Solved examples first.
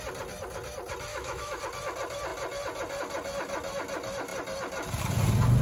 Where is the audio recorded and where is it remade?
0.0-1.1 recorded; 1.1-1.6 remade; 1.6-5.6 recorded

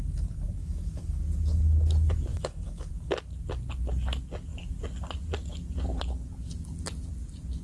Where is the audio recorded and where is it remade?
0.0-0.6 recorded; 0.6-1.2 remade; 1.2-2.3 recorded; 2.3-2.9 remade; 2.9-7.6 recorded

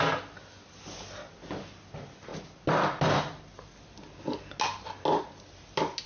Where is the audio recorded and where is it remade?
0.0-6.1 recorded

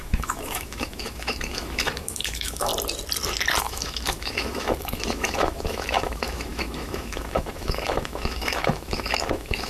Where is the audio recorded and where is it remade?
0.0-2.7 remade; 2.7-3.6 recorded; 3.6-9.7 remade

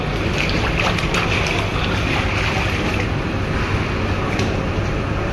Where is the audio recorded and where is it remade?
0.0-5.3 recorded

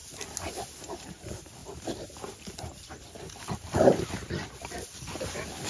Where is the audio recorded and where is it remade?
0.0-5.7 recorded

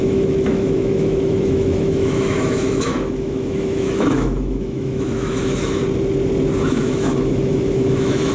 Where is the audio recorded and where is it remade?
0.0-5.8 remade; 5.8-6.7 recorded; 6.7-8.3 remade

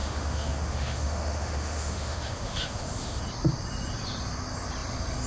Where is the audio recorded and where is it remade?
0.0-3.2 remade; 3.2-5.3 recorded